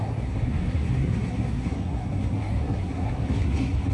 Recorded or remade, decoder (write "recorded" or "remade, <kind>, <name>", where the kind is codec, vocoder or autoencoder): remade, codec, SNAC